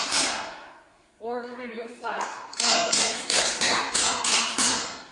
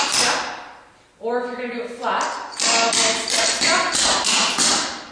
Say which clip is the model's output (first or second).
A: first